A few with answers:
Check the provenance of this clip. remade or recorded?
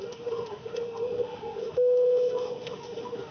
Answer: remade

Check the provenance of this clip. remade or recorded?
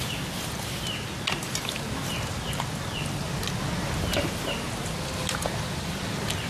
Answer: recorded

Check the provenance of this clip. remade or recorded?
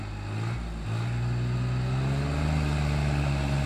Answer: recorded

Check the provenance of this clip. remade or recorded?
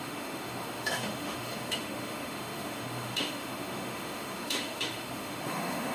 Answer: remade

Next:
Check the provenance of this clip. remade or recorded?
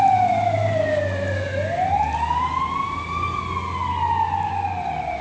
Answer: recorded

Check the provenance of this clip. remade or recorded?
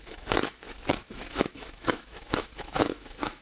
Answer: remade